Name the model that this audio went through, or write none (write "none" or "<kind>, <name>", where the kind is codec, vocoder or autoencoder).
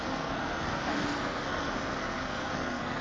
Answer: codec, SNAC